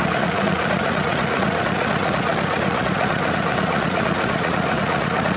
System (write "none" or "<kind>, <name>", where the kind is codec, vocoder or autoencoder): vocoder, Vocos